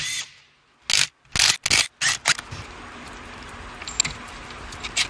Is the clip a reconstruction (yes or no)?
no